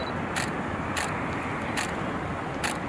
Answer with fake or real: real